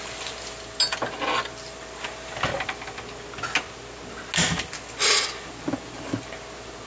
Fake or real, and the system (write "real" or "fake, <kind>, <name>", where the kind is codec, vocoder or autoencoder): real